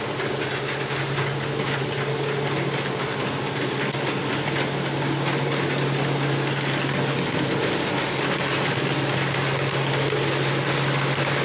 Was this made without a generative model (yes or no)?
yes